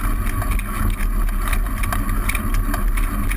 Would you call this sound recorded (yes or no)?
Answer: yes